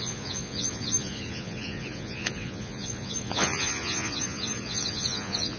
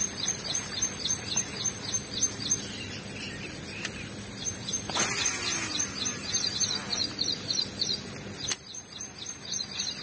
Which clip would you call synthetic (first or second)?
first